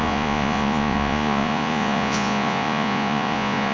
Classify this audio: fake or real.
fake